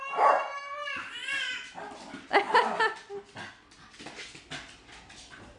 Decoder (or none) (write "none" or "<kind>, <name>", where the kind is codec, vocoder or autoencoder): none